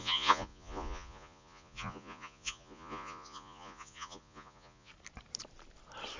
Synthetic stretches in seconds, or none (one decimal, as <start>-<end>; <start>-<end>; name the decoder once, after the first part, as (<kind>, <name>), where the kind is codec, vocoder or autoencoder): 0.0-4.9 (vocoder, Vocos)